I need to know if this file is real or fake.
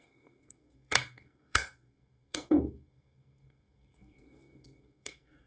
fake